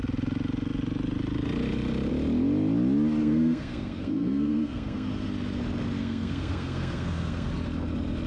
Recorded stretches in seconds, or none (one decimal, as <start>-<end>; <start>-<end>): 0.0-3.2; 5.1-6.0; 7.5-8.3